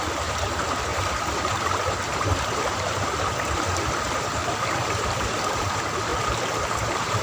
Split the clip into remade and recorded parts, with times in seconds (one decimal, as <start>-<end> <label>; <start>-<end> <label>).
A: 0.0-6.1 remade; 6.1-6.6 recorded; 6.6-7.2 remade